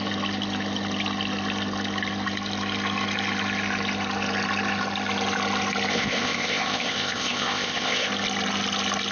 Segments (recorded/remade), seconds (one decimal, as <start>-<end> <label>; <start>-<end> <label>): 0.0-5.9 recorded; 5.9-8.1 remade; 8.1-9.1 recorded